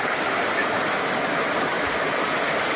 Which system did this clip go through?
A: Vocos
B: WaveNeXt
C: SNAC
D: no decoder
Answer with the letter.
D